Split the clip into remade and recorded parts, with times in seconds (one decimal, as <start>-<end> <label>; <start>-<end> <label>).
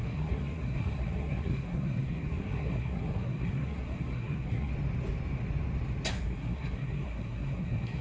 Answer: 0.0-4.7 remade; 4.7-6.1 recorded; 6.1-8.0 remade